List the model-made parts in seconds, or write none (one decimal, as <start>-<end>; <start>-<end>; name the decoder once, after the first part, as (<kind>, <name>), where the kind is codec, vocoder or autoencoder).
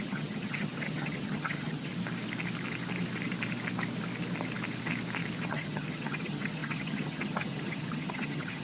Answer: 0.0-1.9 (vocoder, HiFi-GAN); 5.5-8.6